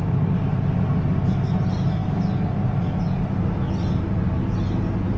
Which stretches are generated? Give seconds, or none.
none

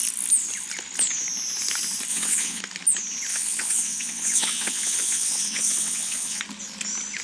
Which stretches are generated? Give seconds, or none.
2.1-2.6 (vocoder, WaveNeXt); 3.3-6.4

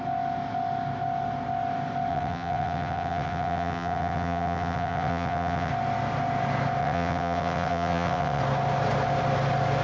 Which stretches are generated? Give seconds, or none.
2.1-5.7 (vocoder, WaveNeXt); 6.8-8.4

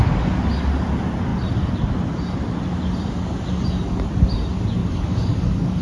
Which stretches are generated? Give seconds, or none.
4.8-5.8 (codec, DAC)

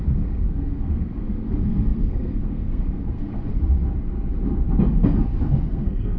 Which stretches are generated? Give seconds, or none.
0.0-3.5 (codec, SNAC); 5.7-6.2

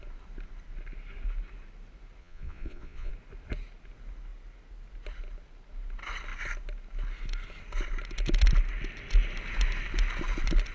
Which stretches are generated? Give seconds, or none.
2.2-3.1 (vocoder, Vocos)

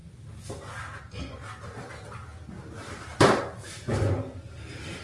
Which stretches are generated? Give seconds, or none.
none